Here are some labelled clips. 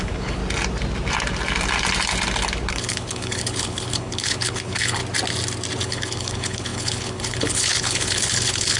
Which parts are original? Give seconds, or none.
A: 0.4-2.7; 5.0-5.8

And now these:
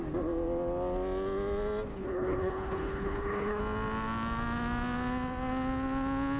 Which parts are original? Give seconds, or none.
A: 0.0-1.9; 3.6-6.4

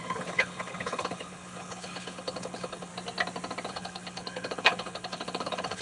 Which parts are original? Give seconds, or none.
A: 2.9-3.7

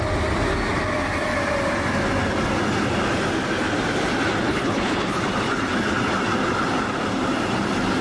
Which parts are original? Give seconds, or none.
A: 0.0-4.4; 5.2-8.0

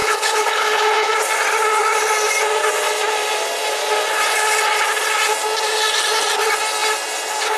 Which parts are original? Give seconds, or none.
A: 1.1-7.6

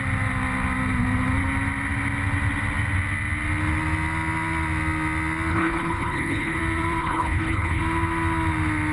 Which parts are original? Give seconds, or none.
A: 0.0-5.5; 6.6-7.0; 7.8-8.9

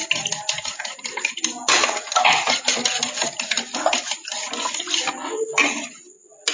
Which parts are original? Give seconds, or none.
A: 0.0-6.5

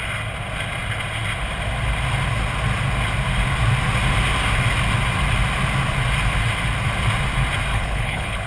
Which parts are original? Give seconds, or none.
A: 0.0-7.7